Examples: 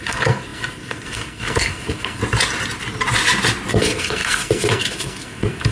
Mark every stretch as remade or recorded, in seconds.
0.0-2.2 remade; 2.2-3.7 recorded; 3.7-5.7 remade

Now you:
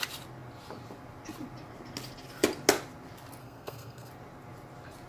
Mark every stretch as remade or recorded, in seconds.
0.0-3.4 recorded; 3.4-4.1 remade; 4.1-5.1 recorded

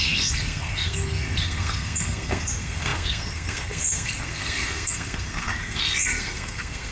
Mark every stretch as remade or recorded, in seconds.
0.0-6.9 remade

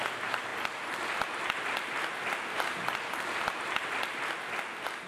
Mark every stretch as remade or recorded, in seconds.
0.0-5.1 recorded

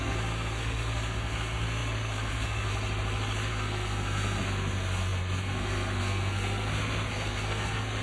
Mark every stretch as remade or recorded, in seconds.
0.0-2.7 remade; 2.7-3.5 recorded; 3.5-8.0 remade